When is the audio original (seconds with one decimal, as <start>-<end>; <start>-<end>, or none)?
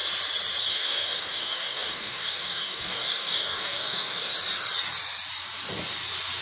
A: 0.0-0.7; 4.3-6.4